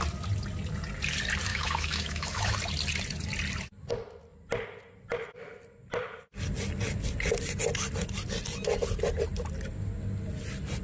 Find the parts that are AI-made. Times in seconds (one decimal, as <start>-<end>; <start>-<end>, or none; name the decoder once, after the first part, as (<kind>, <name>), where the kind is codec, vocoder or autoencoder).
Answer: 1.5-2.5 (autoencoder, DAC-VAE)